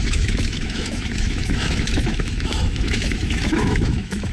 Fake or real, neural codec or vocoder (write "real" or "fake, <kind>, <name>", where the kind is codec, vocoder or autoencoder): fake, autoencoder, DAC-VAE